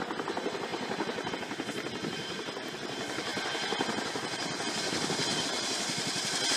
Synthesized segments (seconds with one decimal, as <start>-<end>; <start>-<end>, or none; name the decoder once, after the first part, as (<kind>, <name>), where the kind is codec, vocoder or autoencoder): 0.7-1.3 (vocoder, BigVGAN v2)